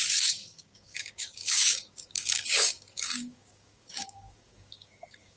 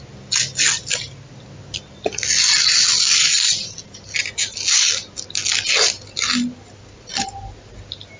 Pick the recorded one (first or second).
second